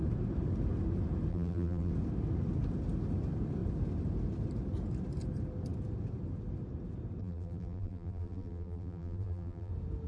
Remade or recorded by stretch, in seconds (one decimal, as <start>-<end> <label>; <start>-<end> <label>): 0.0-1.3 recorded; 1.3-1.9 remade; 1.9-7.2 recorded; 7.2-9.7 remade; 9.7-10.1 recorded